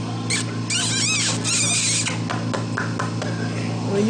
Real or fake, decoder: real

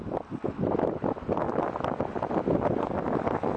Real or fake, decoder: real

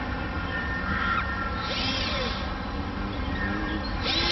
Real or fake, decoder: real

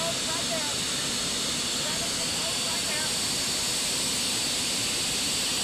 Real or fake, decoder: real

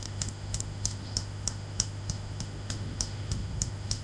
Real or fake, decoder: fake, autoencoder, DAC-VAE